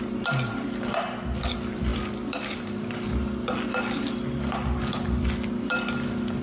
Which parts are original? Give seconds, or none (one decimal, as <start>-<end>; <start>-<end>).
0.0-6.4